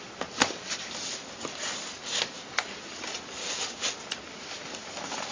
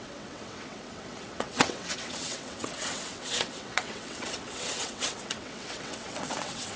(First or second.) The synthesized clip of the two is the second